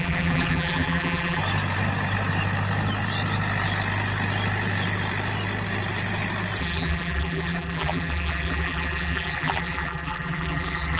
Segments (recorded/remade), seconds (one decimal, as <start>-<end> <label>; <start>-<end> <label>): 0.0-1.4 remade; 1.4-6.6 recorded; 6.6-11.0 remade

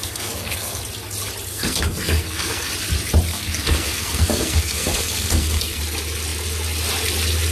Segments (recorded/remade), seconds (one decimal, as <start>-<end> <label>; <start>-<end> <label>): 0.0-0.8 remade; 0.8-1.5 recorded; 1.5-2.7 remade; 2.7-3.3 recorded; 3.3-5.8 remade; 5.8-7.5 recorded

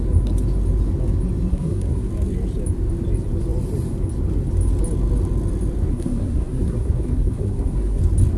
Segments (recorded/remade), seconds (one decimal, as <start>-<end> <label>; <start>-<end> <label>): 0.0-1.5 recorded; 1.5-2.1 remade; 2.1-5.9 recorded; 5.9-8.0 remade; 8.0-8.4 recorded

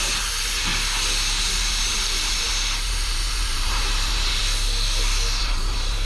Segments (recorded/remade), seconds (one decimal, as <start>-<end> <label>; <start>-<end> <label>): 0.0-0.7 remade; 0.7-1.4 recorded; 1.4-4.4 remade; 4.4-5.4 recorded; 5.4-6.0 remade

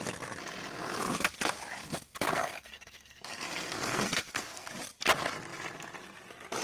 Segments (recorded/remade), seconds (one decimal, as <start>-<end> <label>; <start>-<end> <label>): 0.0-1.8 recorded; 1.8-4.7 remade; 4.7-6.6 recorded

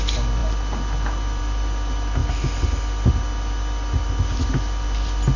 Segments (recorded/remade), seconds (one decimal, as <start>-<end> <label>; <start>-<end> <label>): 0.0-5.4 recorded

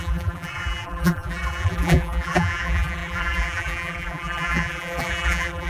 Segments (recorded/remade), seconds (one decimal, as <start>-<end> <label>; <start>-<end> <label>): 0.0-5.7 remade

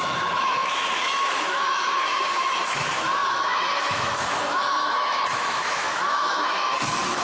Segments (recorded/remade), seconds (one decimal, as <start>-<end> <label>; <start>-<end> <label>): 0.0-7.2 remade